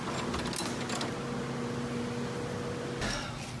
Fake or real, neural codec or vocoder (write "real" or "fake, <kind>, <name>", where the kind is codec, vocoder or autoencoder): real